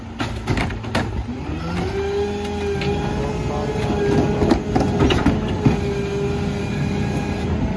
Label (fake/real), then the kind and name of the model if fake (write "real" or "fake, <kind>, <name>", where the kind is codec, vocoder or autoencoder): real